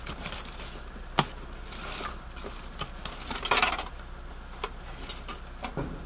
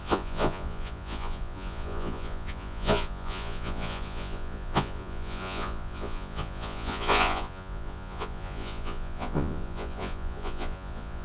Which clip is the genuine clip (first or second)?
first